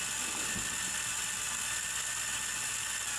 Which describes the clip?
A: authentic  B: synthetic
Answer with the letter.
A